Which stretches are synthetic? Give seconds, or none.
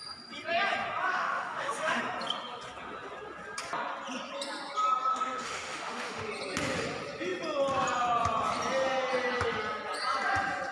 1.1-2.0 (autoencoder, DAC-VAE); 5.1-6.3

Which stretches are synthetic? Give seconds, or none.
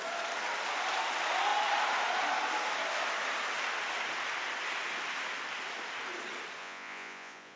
6.6-7.6 (vocoder, Vocos)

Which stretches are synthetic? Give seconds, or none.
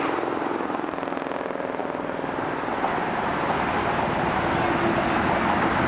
none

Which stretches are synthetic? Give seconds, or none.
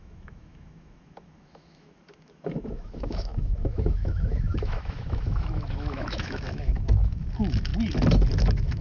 0.0-7.7 (autoencoder, DAC-VAE); 8.4-8.8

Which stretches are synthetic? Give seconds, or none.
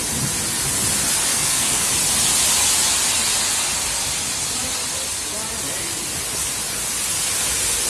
1.3-1.9 (codec, SNAC)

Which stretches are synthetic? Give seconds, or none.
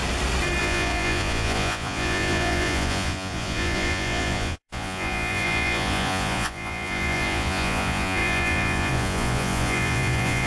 0.6-10.5 (vocoder, Vocos)